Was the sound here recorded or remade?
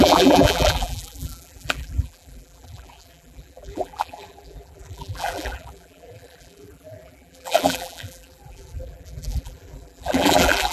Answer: remade